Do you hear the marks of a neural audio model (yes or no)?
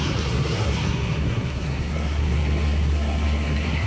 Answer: yes